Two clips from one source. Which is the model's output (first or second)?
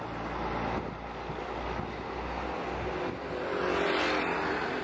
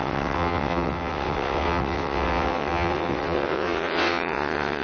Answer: second